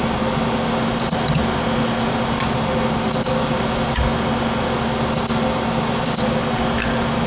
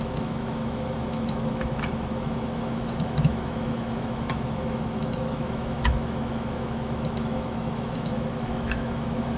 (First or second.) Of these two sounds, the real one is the first